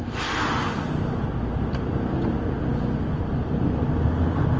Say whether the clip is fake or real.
real